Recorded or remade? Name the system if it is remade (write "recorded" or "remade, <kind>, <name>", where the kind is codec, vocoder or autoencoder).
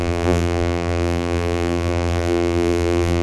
remade, vocoder, BigVGAN v2